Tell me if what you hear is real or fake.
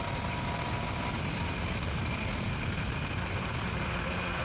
fake